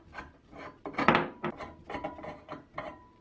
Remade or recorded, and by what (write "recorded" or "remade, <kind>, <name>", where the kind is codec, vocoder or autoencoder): recorded